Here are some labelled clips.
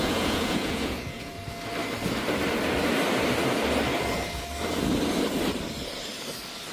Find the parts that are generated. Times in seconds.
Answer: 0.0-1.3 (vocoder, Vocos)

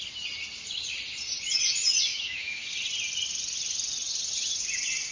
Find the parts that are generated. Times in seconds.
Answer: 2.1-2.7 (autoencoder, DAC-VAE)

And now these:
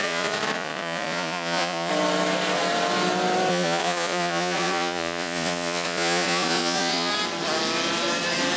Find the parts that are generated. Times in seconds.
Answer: 0.0-1.9 (vocoder, Vocos); 3.5-7.1

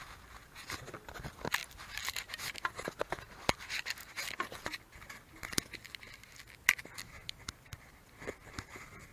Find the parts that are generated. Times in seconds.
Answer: none